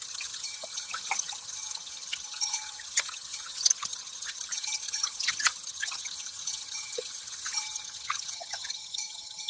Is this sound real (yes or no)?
no